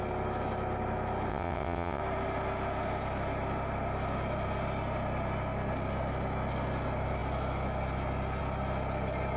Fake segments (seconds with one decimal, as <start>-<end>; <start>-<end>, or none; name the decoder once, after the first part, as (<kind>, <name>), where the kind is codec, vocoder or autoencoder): 1.3-2.0 (vocoder, WaveNeXt)